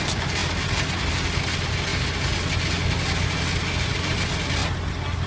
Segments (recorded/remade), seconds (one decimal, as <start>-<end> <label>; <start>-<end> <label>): 0.0-5.3 recorded